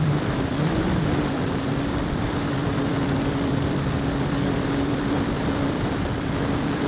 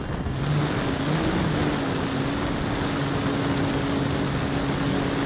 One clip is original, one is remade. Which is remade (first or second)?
first